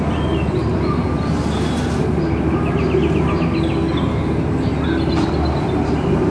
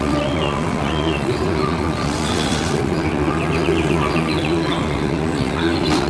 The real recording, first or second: first